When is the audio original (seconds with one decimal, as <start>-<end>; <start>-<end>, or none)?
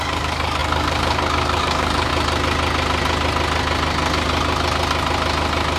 2.1-5.8